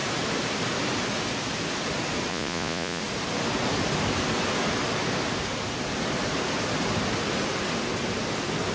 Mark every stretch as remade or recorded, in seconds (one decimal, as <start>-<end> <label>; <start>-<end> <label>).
0.0-2.3 recorded; 2.3-3.0 remade; 3.0-8.7 recorded